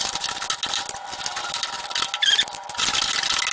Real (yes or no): yes